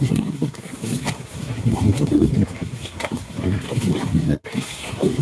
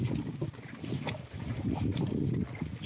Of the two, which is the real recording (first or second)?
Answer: second